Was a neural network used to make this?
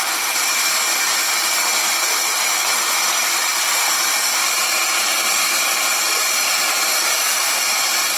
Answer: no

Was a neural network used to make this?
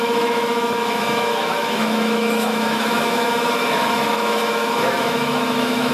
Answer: yes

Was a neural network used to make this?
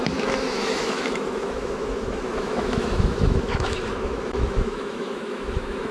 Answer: yes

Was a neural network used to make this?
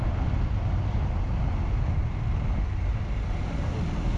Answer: no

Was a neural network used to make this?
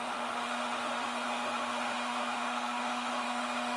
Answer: yes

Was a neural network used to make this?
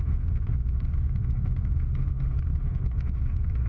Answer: yes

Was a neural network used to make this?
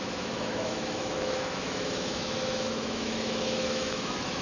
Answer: yes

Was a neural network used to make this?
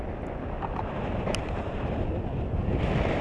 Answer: no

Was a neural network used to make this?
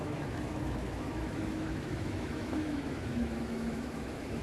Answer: yes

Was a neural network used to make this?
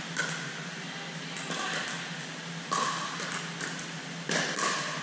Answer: no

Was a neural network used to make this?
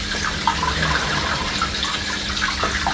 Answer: no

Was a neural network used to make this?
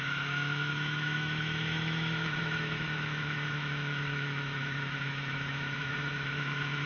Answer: yes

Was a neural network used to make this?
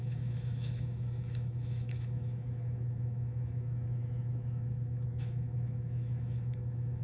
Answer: yes